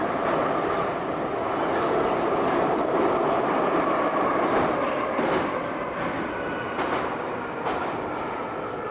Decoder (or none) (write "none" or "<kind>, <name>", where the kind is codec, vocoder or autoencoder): none